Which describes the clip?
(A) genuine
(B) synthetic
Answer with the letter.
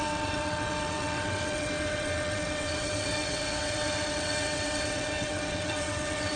B